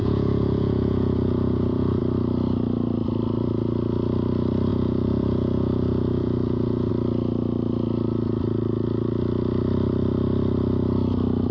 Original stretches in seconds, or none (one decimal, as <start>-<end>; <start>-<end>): 2.0-4.7; 6.9-11.5